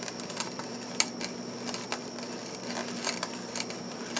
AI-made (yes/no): no